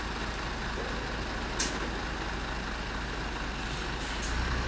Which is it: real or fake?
real